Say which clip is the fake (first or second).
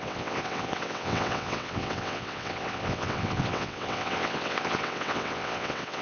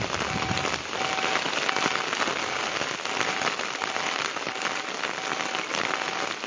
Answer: first